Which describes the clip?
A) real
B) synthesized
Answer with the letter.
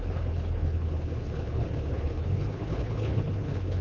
B